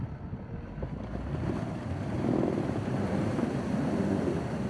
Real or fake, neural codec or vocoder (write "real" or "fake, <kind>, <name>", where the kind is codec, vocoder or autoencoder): real